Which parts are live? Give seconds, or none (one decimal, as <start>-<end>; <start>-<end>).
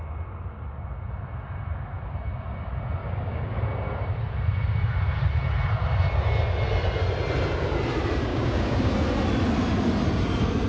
0.0-3.0; 3.6-8.3; 8.9-10.7